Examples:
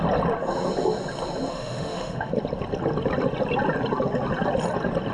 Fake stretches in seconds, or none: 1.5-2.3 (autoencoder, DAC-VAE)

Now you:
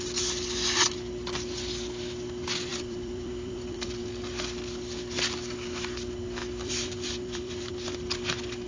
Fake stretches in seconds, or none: 2.7-4.0 (vocoder, BigVGAN v2); 6.4-7.7

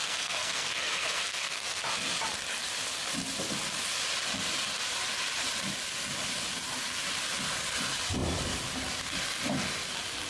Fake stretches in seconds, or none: 0.0-1.8 (codec, SNAC)